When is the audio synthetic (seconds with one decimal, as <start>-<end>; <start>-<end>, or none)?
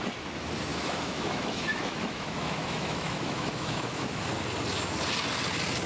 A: 0.7-4.2